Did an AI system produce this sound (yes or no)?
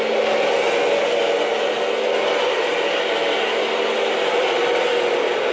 no